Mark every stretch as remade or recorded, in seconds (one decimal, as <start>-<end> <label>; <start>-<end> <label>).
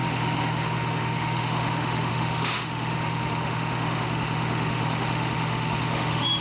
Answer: 0.0-6.4 remade